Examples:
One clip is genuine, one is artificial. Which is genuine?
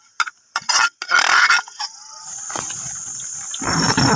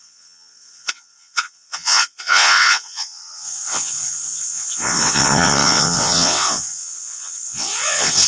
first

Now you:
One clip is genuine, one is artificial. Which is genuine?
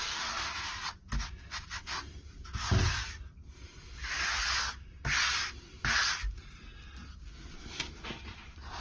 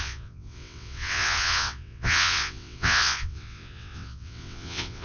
first